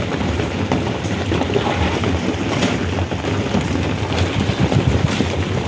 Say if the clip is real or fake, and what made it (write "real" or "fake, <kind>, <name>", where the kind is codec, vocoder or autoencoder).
real